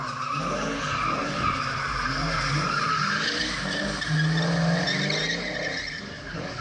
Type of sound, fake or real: real